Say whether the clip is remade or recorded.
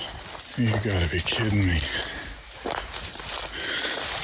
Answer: recorded